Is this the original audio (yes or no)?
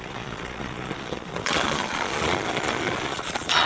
no